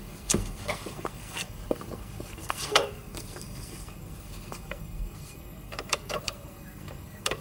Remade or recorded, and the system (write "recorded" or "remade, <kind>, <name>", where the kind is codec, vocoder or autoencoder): remade, codec, SNAC